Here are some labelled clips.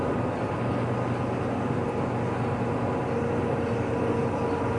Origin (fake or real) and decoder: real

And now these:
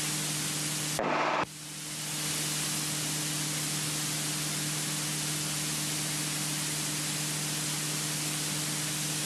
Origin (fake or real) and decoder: real